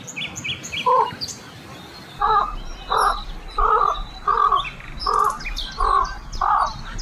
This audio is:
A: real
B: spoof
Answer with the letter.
A